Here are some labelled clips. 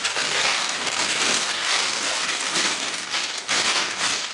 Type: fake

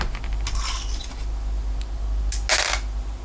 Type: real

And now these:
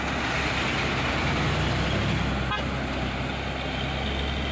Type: real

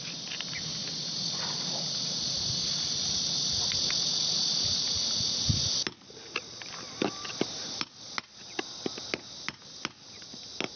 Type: real